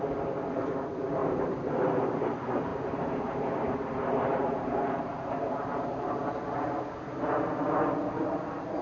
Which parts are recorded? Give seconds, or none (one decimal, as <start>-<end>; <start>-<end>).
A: 0.0-1.2; 1.8-2.7; 6.1-8.8